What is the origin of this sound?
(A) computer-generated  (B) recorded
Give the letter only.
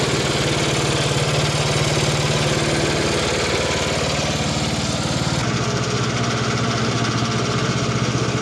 B